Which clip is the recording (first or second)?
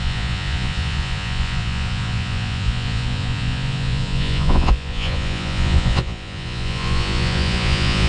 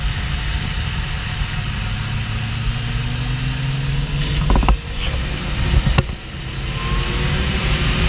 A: second